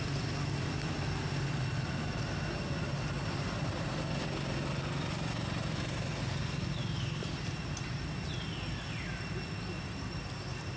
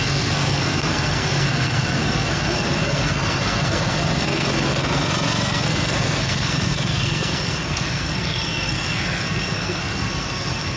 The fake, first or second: second